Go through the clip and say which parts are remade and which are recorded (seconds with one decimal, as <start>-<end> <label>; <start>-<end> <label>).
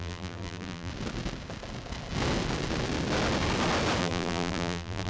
0.0-0.9 remade; 0.9-4.0 recorded; 4.0-5.1 remade